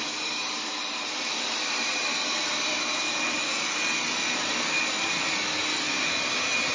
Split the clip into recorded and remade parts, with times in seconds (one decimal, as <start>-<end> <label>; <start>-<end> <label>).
0.0-2.7 remade; 2.7-6.7 recorded